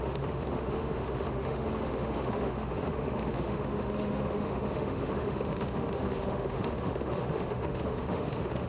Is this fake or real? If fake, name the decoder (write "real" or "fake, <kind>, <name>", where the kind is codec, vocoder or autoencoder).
fake, autoencoder, DAC-VAE